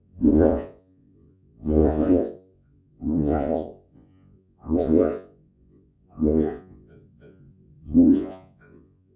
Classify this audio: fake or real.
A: fake